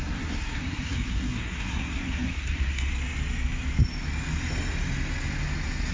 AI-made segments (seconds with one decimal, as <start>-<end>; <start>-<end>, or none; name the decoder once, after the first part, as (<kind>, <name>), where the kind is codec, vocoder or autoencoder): 0.0-2.9 (codec, SNAC)